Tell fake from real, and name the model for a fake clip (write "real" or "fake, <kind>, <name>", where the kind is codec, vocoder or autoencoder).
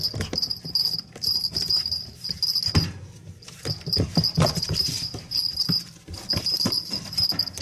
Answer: real